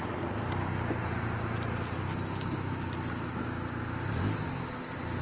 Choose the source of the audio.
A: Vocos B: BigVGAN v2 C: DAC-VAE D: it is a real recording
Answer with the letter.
D